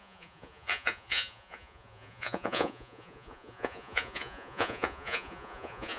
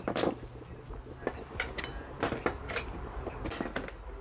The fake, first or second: first